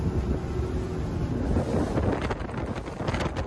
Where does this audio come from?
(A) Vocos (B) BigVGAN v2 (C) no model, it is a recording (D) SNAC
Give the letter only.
C